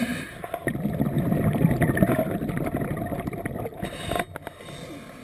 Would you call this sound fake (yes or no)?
no